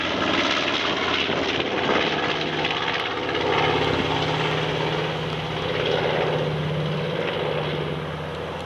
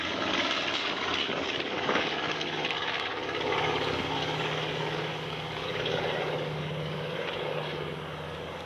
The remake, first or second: second